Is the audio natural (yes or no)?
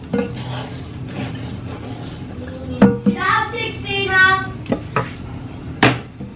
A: yes